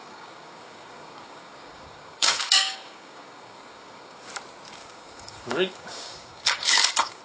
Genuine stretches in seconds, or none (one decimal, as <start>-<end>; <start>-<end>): 4.3-4.8